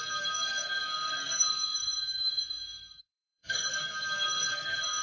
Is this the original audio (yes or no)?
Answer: no